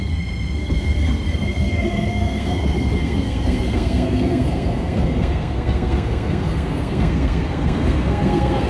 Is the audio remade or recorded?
remade